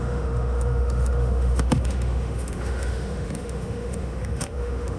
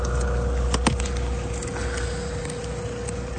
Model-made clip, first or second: first